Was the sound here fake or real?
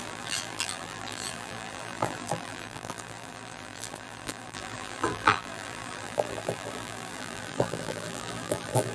fake